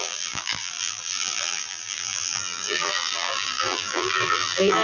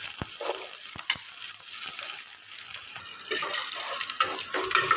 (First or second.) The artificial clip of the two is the first